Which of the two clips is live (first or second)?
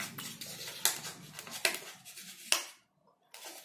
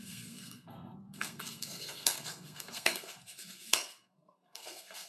first